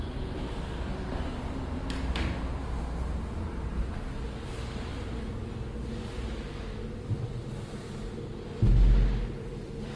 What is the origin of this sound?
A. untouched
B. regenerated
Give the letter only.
A